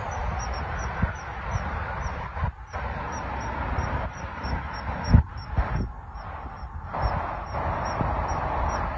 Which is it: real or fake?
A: real